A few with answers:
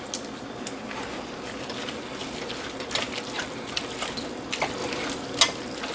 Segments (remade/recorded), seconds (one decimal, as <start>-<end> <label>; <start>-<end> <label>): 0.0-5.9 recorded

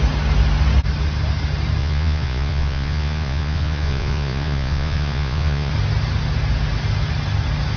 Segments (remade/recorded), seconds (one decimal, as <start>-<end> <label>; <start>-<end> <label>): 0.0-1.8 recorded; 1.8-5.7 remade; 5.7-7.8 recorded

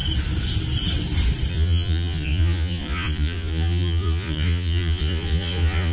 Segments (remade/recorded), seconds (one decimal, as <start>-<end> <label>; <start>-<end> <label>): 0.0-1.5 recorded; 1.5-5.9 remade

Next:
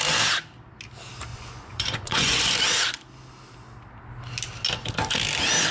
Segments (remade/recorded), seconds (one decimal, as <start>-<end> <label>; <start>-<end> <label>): 0.0-1.3 recorded; 1.3-2.6 remade; 2.6-5.7 recorded

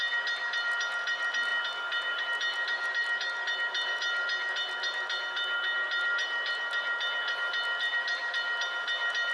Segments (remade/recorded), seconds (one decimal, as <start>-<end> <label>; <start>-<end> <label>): 0.0-9.3 recorded

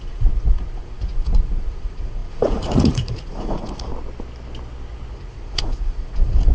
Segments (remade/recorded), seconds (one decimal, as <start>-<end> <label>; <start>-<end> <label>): 0.0-3.9 remade; 3.9-5.1 recorded; 5.1-6.5 remade

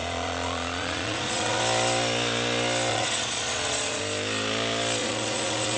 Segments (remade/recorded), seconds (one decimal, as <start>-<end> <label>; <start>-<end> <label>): 0.0-1.6 remade; 1.6-2.9 recorded; 2.9-4.0 remade; 4.0-5.0 recorded; 5.0-5.8 remade